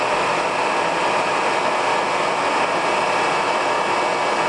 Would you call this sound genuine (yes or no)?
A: yes